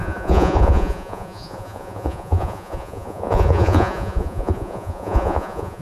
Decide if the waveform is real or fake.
fake